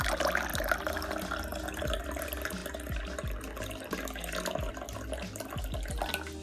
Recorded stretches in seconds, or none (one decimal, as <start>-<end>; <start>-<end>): 0.0-6.4